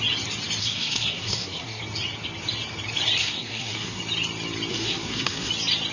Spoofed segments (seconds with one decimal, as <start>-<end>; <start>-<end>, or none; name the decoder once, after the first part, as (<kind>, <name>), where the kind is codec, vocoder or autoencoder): 0.6-1.8 (codec, SNAC); 3.2-4.0; 4.7-5.5